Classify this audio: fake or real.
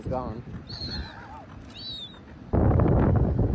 real